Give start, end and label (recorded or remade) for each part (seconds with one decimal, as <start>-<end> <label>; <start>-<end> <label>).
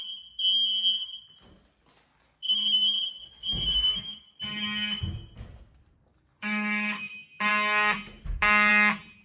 0.0-2.1 recorded; 2.1-4.4 remade; 4.4-6.1 recorded; 6.1-7.1 remade; 7.1-9.2 recorded